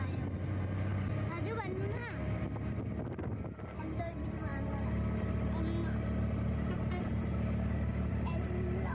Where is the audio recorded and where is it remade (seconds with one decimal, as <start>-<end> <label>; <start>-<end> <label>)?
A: 0.0-8.9 recorded